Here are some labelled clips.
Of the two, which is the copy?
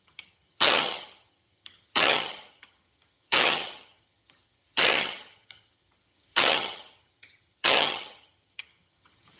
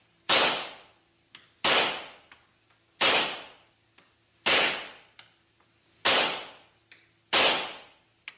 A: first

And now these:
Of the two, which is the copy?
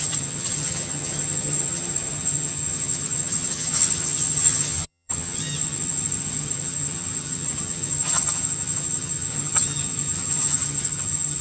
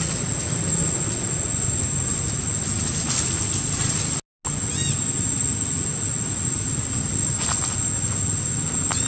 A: first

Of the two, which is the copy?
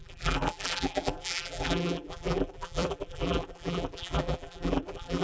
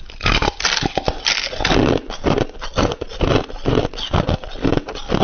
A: first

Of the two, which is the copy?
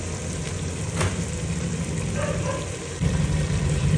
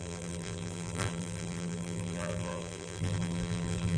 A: second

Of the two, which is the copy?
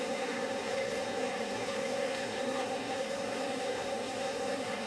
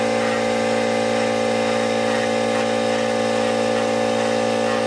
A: first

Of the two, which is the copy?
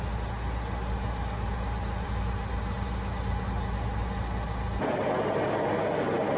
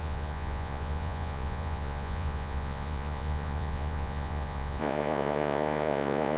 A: second